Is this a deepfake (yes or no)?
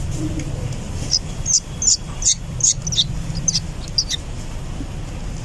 no